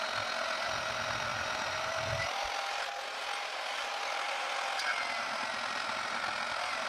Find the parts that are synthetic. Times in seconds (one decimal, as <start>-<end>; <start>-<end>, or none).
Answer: none